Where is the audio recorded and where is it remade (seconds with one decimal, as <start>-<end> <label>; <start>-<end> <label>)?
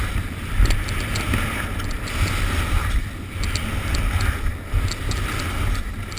0.0-6.2 recorded